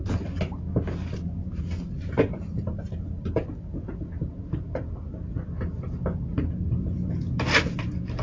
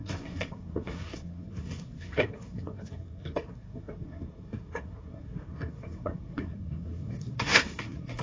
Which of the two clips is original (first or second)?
first